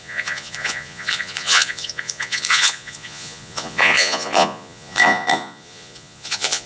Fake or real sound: fake